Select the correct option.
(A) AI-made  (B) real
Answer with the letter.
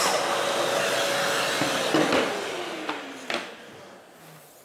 B